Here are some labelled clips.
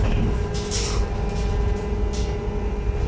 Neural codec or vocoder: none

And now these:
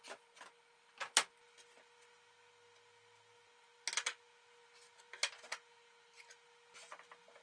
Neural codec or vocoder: none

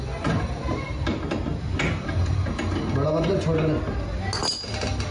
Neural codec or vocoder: none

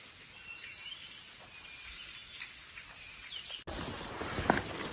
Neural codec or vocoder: none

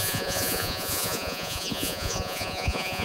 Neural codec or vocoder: vocoder, Vocos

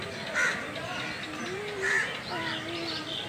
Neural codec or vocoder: none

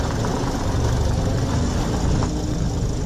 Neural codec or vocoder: none